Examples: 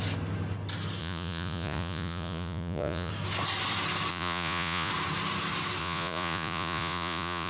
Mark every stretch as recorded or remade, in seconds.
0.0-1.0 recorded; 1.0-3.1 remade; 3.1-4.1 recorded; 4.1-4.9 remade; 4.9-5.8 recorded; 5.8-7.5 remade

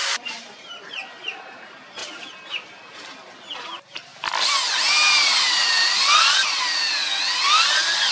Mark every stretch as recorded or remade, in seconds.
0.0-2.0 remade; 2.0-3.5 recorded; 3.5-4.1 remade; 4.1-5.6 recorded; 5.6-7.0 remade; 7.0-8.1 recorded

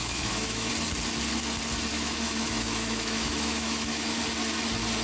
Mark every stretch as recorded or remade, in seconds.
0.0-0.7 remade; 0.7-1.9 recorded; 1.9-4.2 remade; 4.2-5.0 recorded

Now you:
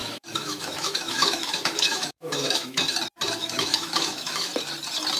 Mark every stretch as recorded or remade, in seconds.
0.0-2.8 remade; 2.8-3.4 recorded; 3.4-4.5 remade; 4.5-5.2 recorded